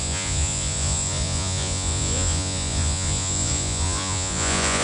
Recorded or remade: remade